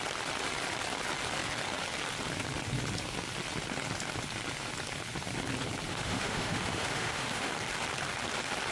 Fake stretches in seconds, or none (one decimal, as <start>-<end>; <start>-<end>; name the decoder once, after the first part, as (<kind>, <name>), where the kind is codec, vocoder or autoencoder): 5.9-7.5 (autoencoder, DAC-VAE)